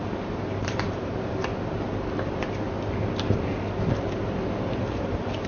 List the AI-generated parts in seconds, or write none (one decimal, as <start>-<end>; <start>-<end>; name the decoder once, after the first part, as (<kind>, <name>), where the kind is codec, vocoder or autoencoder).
0.0-1.5 (vocoder, BigVGAN v2); 4.8-5.5